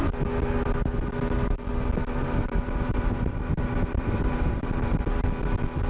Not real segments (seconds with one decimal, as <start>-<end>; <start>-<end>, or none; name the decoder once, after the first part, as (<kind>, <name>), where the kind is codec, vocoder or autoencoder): 2.2-5.0 (vocoder, BigVGAN v2)